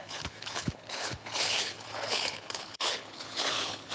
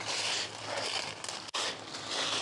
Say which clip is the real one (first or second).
second